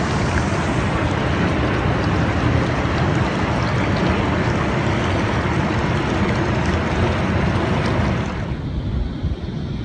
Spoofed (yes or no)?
no